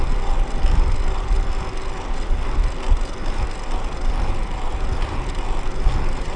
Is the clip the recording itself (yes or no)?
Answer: yes